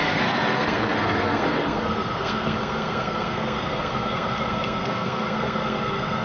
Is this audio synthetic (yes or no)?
yes